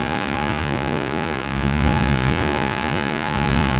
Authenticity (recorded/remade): remade